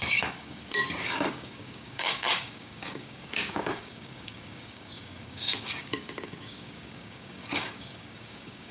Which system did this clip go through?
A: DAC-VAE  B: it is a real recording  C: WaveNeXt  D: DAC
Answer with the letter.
D